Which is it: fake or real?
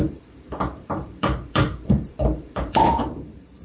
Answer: fake